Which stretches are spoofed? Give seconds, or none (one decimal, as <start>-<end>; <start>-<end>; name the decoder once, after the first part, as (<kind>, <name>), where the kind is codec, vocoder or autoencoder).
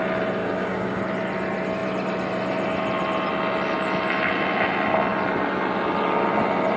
0.4-1.0 (codec, DAC)